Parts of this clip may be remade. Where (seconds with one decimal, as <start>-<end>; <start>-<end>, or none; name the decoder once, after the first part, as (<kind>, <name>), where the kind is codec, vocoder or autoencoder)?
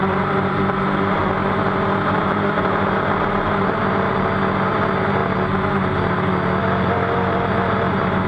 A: 0.0-1.2 (vocoder, BigVGAN v2); 2.1-3.8; 4.6-5.2; 6.6-8.3